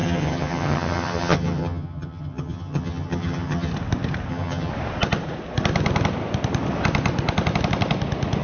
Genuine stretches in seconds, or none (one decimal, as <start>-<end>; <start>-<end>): 3.7-4.3; 4.7-8.4